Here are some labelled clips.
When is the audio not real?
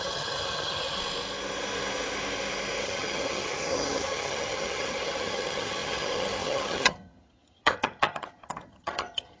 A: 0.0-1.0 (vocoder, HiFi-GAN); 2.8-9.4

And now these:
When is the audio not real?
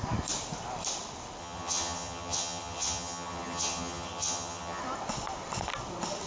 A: 1.4-4.8 (vocoder, HiFi-GAN)